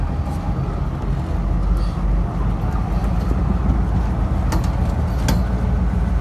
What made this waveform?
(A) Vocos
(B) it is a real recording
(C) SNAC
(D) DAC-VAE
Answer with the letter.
B